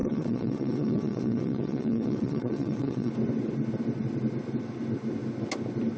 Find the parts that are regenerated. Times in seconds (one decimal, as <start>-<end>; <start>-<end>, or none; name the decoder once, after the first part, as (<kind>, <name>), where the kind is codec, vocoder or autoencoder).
0.0-3.1 (vocoder, WaveNeXt)